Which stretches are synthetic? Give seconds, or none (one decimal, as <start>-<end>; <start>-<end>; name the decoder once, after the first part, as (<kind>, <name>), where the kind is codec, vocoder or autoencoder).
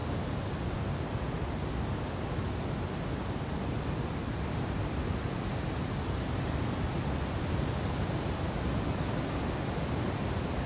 none